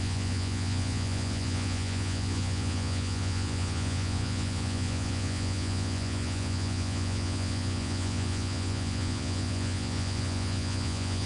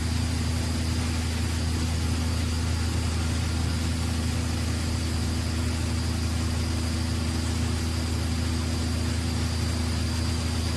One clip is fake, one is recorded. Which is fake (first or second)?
first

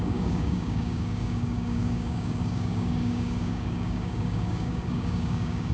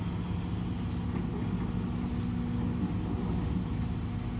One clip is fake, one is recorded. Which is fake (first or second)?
first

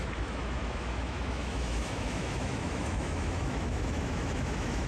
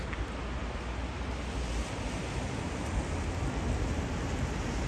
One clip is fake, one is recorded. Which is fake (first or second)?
first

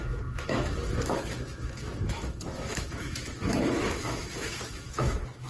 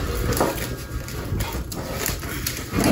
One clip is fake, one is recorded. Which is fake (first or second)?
first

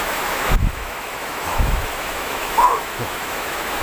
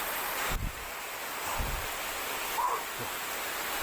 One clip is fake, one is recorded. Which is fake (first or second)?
first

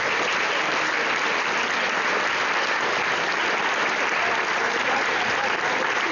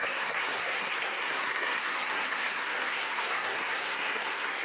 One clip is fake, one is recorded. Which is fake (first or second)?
second